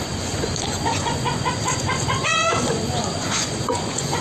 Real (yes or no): no